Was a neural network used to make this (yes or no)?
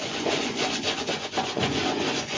yes